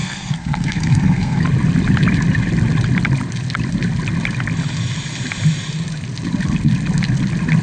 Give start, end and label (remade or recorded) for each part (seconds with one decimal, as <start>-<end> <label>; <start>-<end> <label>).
0.0-1.4 remade; 1.4-7.6 recorded